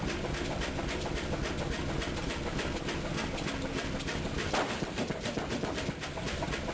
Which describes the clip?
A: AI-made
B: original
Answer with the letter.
B